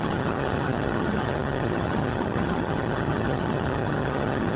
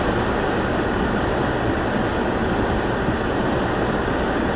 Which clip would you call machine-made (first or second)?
first